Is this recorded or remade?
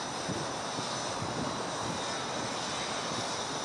recorded